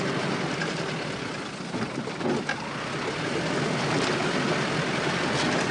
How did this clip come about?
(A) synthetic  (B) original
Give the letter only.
B